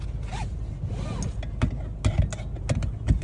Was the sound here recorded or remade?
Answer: recorded